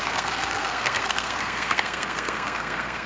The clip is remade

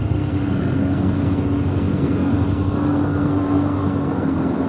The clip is remade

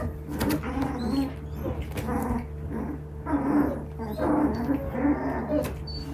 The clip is recorded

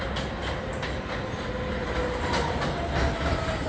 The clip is recorded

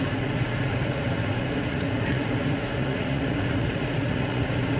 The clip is remade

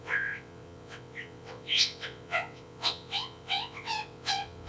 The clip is remade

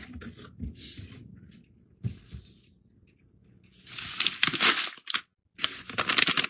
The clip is recorded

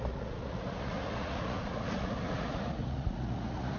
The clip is remade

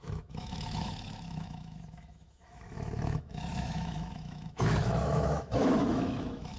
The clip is remade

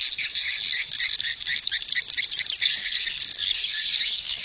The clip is recorded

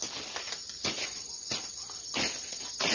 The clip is recorded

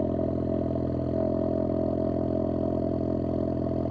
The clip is recorded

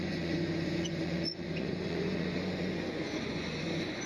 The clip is remade